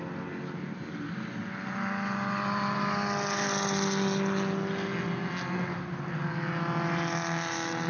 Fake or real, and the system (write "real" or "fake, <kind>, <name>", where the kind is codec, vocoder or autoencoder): real